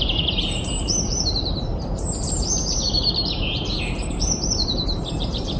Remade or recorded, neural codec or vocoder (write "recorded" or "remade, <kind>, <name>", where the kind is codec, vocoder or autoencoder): remade, vocoder, BigVGAN v2